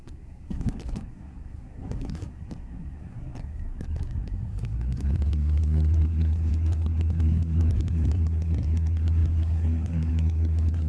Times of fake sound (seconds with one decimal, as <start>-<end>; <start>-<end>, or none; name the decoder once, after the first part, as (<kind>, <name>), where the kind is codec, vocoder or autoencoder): 0.0-10.9 (codec, SNAC)

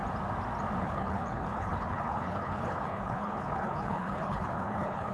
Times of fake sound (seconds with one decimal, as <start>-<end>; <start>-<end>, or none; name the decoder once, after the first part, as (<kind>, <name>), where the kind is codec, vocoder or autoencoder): 0.8-5.1 (codec, HILCodec)

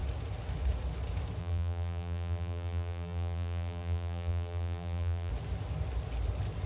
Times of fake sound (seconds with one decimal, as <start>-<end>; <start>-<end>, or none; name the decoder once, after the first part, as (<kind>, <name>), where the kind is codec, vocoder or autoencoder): 1.4-5.3 (vocoder, BigVGAN v2)

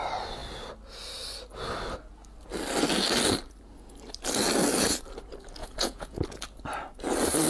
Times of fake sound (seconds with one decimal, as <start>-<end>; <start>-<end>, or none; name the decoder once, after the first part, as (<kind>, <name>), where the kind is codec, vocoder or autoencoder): 5.6-6.2 (vocoder, Vocos)

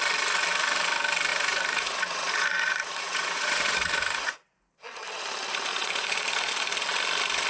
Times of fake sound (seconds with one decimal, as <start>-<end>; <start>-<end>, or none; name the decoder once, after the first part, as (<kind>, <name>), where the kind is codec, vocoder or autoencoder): 1.3-4.7 (vocoder, Vocos); 5.7-6.5

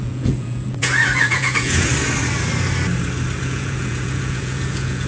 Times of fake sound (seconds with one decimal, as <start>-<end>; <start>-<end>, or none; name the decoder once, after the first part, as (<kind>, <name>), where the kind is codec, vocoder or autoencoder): 0.0-1.9 (vocoder, Vocos); 3.4-5.1